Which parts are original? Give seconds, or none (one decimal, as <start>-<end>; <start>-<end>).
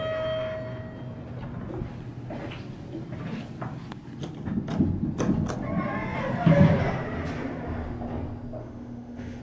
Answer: 0.0-8.6